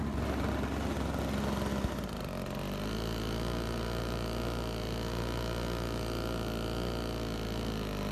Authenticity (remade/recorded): recorded